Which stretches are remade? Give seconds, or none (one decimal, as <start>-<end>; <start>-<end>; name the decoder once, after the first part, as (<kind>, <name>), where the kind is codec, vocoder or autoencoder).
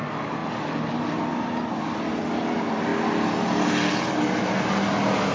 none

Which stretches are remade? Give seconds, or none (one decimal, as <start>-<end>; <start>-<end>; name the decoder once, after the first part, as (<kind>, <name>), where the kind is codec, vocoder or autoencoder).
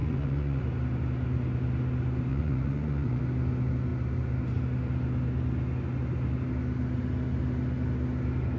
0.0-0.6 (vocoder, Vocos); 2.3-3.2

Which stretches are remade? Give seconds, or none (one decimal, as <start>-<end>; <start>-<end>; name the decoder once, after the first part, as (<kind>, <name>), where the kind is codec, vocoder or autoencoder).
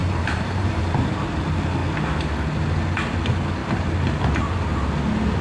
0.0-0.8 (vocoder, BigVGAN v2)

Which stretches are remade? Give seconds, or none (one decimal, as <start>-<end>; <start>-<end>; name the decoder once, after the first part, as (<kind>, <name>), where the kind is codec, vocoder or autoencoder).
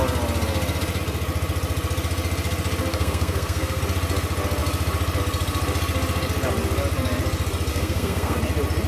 2.9-3.8 (codec, SNAC); 7.7-8.4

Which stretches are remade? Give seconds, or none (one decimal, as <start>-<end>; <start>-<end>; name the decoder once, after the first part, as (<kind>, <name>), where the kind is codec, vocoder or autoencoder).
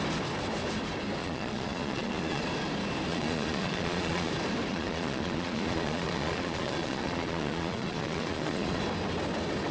1.2-2.4 (vocoder, Vocos); 3.1-4.3; 4.7-8.8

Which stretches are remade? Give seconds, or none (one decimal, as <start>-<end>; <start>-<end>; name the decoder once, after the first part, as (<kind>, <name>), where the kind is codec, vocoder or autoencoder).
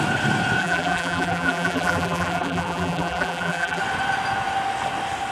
0.6-3.8 (vocoder, BigVGAN v2)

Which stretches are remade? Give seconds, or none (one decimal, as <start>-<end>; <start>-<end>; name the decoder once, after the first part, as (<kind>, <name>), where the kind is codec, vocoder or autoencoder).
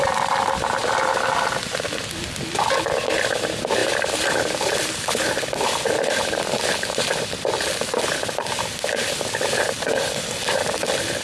0.8-2.0 (vocoder, BigVGAN v2); 3.8-4.4